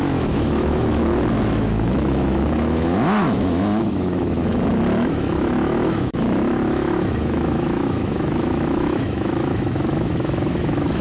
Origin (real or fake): fake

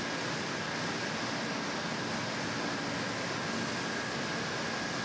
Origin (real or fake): real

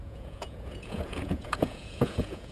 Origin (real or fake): fake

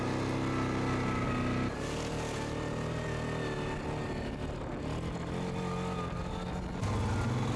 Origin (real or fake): real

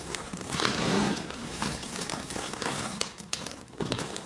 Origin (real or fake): fake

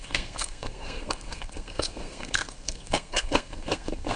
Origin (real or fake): fake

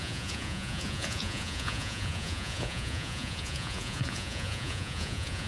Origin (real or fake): fake